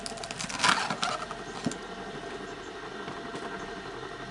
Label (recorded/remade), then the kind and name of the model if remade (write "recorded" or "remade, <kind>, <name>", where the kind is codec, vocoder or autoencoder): recorded